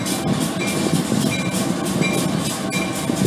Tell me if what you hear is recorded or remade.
recorded